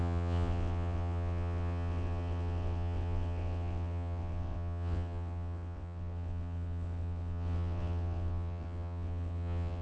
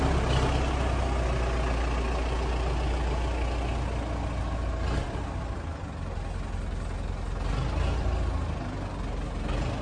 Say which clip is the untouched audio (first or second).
second